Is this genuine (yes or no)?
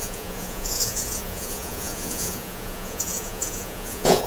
no